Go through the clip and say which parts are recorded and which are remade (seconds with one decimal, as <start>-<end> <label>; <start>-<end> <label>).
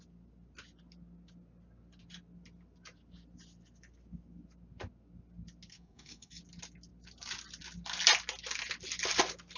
0.0-5.7 recorded; 5.7-6.4 remade; 6.4-9.6 recorded